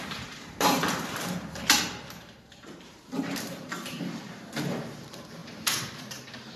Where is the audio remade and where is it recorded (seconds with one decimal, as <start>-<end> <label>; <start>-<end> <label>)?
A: 0.0-6.6 remade